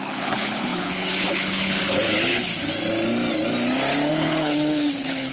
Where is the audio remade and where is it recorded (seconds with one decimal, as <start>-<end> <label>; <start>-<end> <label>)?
0.0-2.5 remade; 2.5-4.1 recorded; 4.1-5.3 remade